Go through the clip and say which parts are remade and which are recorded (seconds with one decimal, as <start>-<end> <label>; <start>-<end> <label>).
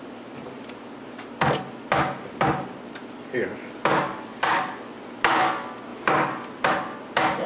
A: 0.0-7.5 recorded